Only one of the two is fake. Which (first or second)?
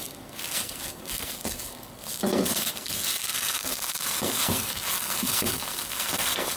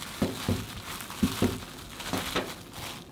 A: first